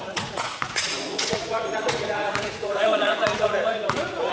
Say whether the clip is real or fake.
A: fake